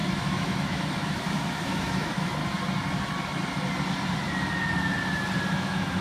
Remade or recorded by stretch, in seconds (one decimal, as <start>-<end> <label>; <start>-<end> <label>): 0.0-2.4 remade; 2.4-5.5 recorded; 5.5-6.0 remade